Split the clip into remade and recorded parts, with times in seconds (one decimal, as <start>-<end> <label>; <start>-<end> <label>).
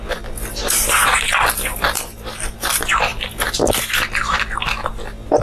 0.0-5.4 recorded